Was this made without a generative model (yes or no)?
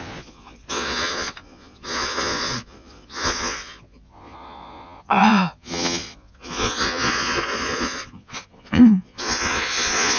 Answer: no